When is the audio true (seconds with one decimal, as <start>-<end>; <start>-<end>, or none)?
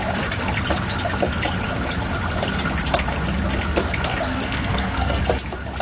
0.0-4.3; 5.2-5.8